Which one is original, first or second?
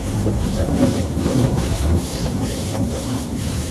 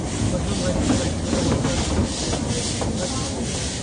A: second